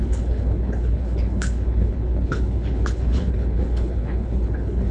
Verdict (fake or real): fake